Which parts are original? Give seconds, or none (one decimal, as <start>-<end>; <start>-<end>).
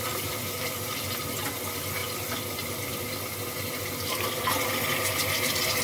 0.0-5.8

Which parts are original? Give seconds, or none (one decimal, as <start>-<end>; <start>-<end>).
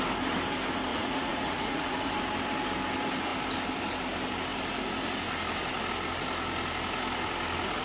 0.0-0.9; 2.1-7.8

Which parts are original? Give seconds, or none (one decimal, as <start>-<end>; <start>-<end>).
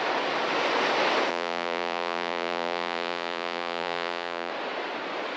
0.0-1.3; 4.5-5.4